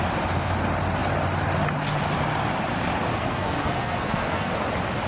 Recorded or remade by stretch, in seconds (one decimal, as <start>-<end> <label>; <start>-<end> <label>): 0.0-3.1 recorded; 3.1-4.5 remade; 4.5-5.1 recorded